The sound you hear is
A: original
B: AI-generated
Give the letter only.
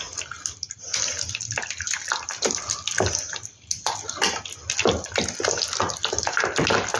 A